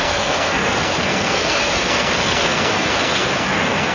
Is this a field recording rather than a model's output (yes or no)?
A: no